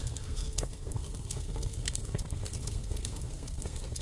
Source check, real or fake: fake